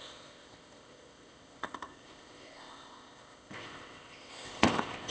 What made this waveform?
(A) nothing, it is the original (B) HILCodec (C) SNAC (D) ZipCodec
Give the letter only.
D